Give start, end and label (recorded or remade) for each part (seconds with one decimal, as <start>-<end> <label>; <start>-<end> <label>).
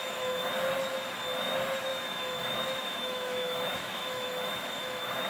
0.0-0.5 remade; 0.5-1.9 recorded; 1.9-5.3 remade